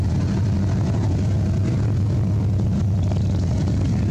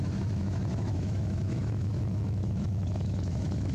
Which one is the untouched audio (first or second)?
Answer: first